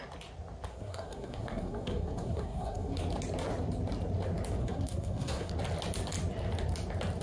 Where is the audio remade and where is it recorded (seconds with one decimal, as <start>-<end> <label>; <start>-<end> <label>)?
0.0-0.7 recorded; 0.7-3.0 remade; 3.0-4.6 recorded; 4.6-5.5 remade; 5.5-7.2 recorded